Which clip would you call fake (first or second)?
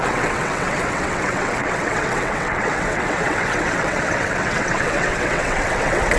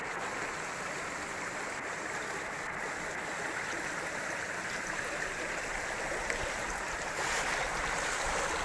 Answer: first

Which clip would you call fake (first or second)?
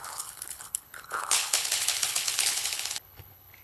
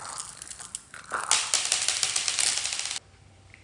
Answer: first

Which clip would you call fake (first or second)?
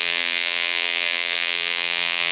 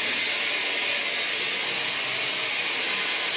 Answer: first